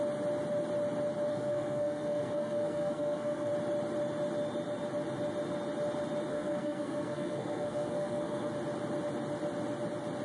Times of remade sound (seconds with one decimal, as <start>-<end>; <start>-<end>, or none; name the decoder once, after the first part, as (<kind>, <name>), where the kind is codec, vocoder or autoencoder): 1.3-3.5 (codec, SNAC); 6.3-8.5